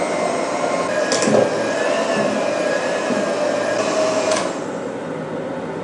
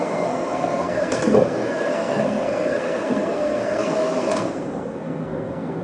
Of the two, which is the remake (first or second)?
second